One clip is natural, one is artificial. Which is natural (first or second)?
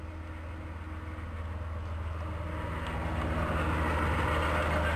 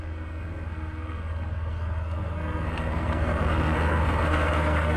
first